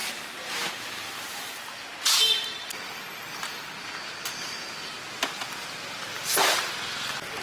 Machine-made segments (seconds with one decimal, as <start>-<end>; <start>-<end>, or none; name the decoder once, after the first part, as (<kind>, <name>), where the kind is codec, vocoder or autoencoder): 0.0-0.5 (vocoder, BigVGAN v2)